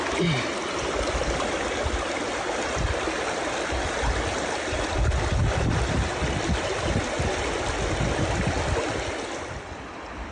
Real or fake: real